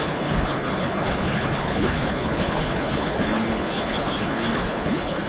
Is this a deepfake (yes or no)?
yes